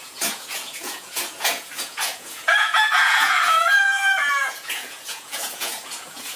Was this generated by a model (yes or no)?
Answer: yes